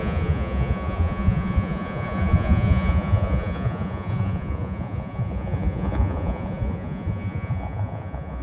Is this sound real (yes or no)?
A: no